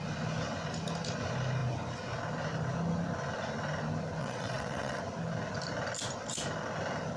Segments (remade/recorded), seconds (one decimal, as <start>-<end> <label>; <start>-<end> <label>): 0.0-4.2 recorded; 4.2-5.0 remade; 5.0-7.2 recorded